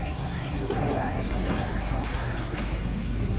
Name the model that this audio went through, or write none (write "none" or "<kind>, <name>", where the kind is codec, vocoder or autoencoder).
codec, SNAC